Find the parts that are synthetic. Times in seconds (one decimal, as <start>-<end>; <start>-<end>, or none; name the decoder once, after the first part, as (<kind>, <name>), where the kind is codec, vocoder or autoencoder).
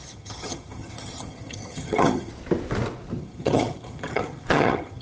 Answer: 0.0-2.3 (vocoder, HiFi-GAN); 3.2-5.0